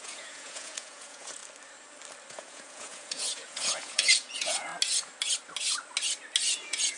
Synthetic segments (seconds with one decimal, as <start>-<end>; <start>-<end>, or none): 0.0-1.4; 2.3-4.7; 6.6-7.0